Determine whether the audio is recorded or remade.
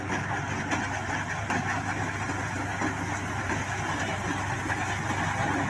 recorded